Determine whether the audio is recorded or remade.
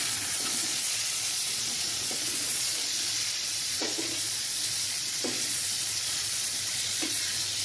remade